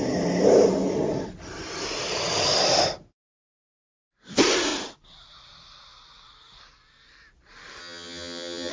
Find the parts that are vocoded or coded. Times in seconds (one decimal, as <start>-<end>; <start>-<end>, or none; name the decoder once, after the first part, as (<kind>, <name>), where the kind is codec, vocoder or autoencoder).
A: 7.8-8.7 (vocoder, HiFi-GAN)